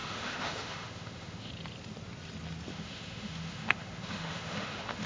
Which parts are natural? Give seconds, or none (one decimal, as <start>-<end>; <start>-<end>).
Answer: 1.5-2.7